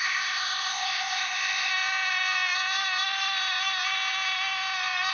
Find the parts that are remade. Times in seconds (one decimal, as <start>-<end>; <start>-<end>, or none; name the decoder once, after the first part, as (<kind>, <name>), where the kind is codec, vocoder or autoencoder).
0.0-1.7 (codec, ZipCodec)